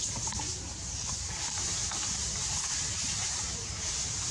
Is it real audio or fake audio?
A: fake